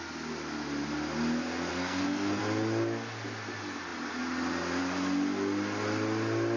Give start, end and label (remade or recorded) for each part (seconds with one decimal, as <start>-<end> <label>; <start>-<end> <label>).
0.0-1.7 recorded; 1.7-2.4 remade; 2.4-6.6 recorded

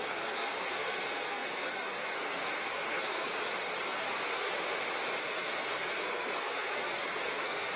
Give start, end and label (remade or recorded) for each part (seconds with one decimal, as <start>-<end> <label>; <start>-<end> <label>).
0.0-3.3 remade; 3.3-3.9 recorded; 3.9-4.5 remade; 4.5-5.2 recorded; 5.2-7.8 remade

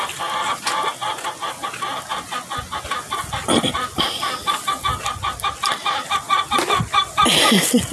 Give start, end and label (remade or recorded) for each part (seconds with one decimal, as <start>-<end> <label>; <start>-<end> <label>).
0.0-7.9 recorded

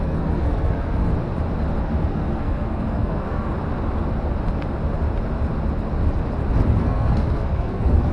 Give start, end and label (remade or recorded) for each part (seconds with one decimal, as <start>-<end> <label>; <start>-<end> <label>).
0.0-1.0 remade; 1.0-1.8 recorded; 1.8-3.5 remade; 3.5-6.8 recorded; 6.8-8.1 remade

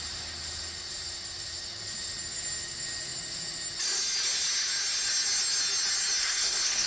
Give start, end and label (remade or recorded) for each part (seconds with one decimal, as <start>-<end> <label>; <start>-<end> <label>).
0.0-6.2 recorded; 6.2-6.9 remade

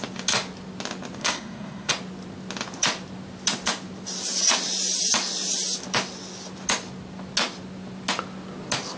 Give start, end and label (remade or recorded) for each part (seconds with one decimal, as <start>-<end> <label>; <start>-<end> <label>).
0.0-1.2 recorded; 1.2-1.9 remade; 1.9-9.0 recorded

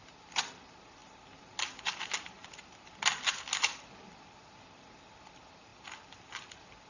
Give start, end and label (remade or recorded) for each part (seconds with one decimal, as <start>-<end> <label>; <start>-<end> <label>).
0.0-6.9 recorded

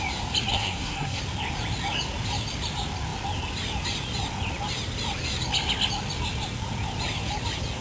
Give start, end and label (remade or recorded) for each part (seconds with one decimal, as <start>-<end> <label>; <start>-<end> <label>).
0.0-0.5 recorded; 0.5-1.2 remade; 1.2-7.8 recorded